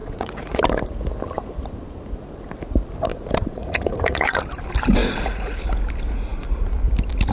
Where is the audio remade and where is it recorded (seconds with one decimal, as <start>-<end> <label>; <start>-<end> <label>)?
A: 0.0-0.6 remade; 0.6-3.1 recorded; 3.1-4.4 remade; 4.4-5.0 recorded; 5.0-5.6 remade; 5.6-7.3 recorded